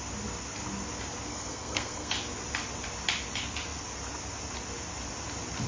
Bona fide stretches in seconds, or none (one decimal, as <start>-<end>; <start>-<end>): 0.0-1.3; 2.1-5.7